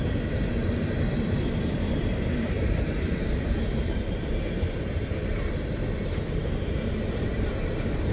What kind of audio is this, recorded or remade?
remade